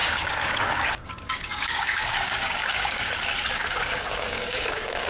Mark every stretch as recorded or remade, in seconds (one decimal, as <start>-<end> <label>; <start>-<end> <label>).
0.0-3.1 remade; 3.1-3.5 recorded; 3.5-5.1 remade